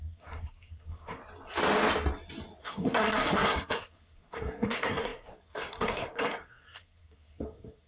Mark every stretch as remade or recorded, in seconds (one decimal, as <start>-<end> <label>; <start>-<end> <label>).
0.0-1.2 remade; 1.2-2.6 recorded; 2.6-7.9 remade

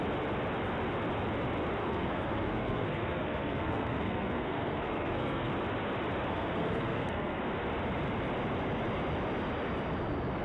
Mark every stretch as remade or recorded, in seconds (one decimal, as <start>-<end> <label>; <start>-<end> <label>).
0.0-1.8 recorded; 1.8-5.5 remade; 5.5-6.3 recorded; 6.3-7.4 remade; 7.4-10.4 recorded

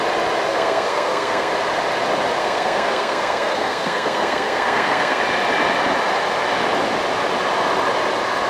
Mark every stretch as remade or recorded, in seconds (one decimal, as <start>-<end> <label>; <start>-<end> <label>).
0.0-0.5 recorded; 0.5-1.5 remade; 1.5-2.4 recorded; 2.4-5.2 remade; 5.2-8.5 recorded

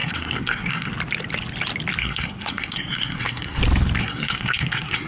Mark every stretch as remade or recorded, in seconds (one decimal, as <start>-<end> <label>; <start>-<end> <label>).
0.0-0.9 remade; 0.9-2.0 recorded; 2.0-3.6 remade; 3.6-4.0 recorded; 4.0-5.1 remade

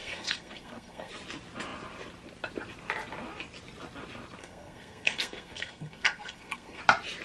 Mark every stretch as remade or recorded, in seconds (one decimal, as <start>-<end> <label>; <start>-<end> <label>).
0.0-1.1 remade; 1.1-4.4 recorded; 4.4-6.8 remade; 6.8-7.2 recorded

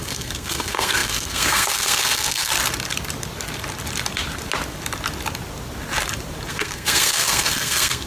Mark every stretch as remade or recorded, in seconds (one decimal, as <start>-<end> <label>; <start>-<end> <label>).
0.0-2.5 remade; 2.5-6.5 recorded; 6.5-8.1 remade

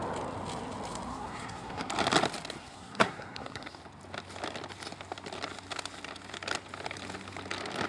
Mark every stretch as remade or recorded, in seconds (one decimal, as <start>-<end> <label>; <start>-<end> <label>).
0.0-1.1 recorded; 1.1-1.9 remade; 1.9-2.6 recorded; 2.6-3.8 remade; 3.8-7.9 recorded